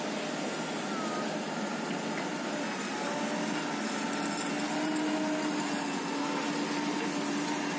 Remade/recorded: recorded